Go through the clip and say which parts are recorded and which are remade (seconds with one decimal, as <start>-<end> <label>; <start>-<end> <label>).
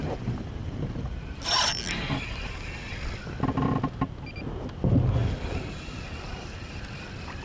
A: 0.0-7.4 recorded